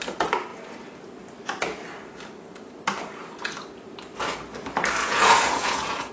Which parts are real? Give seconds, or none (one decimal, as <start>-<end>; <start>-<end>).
0.0-5.0